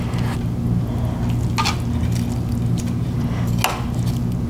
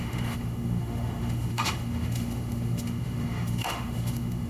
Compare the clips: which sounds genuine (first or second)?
first